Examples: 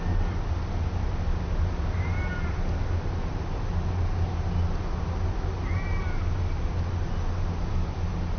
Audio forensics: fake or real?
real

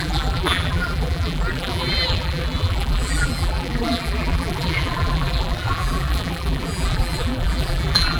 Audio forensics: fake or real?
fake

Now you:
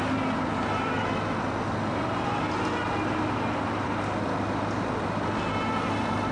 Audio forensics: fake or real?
real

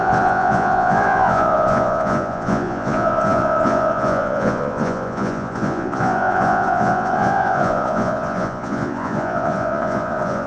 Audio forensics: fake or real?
fake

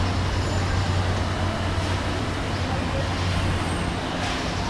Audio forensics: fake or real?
real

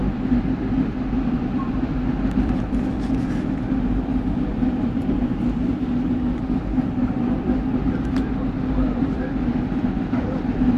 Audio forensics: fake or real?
fake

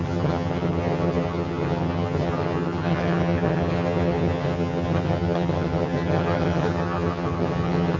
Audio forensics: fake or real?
fake